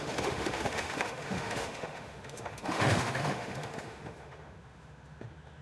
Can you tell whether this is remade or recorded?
remade